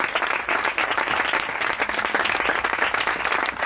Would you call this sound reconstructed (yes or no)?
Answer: no